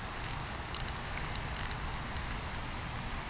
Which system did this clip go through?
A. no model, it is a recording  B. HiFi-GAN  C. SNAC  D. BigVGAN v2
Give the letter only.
A